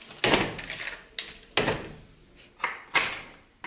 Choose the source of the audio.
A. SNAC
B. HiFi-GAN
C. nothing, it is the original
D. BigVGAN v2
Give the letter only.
C